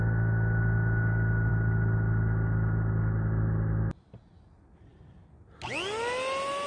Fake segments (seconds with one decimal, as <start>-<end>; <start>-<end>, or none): none